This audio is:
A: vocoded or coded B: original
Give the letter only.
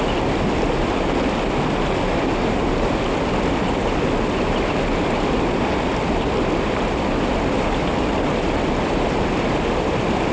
B